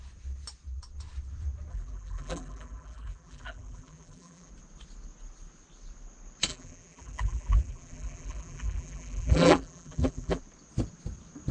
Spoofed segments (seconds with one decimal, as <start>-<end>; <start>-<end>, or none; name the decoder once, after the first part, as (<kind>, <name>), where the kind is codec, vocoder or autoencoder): 1.7-4.5 (vocoder, BigVGAN v2); 6.5-10.4